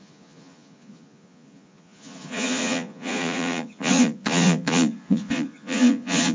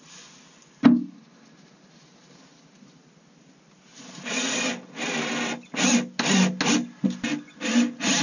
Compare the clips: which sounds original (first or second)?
second